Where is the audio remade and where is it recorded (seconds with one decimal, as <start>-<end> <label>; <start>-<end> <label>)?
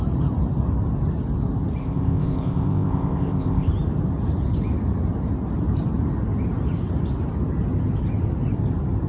0.0-1.8 recorded; 1.8-3.7 remade; 3.7-9.1 recorded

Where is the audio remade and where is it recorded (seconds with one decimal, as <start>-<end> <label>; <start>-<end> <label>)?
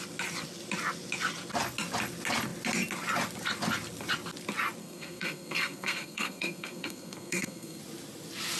0.0-4.8 recorded; 4.8-7.8 remade; 7.8-8.6 recorded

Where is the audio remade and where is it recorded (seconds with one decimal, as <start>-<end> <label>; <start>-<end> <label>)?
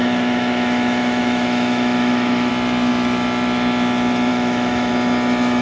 0.0-2.5 remade; 2.5-4.3 recorded; 4.3-4.9 remade; 4.9-5.6 recorded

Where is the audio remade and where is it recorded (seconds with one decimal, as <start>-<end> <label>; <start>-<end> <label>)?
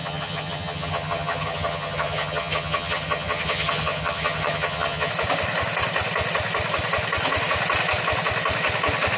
0.0-5.1 remade; 5.1-9.2 recorded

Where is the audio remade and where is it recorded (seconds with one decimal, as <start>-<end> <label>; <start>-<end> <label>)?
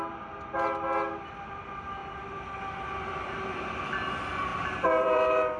0.0-4.5 recorded; 4.5-5.6 remade